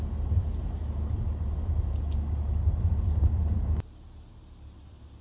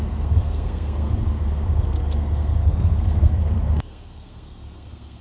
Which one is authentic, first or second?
first